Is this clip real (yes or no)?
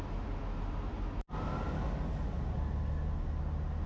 yes